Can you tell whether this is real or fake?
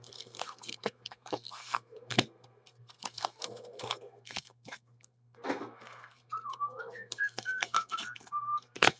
fake